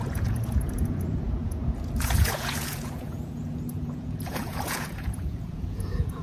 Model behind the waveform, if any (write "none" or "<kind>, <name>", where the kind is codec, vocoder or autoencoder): vocoder, Vocos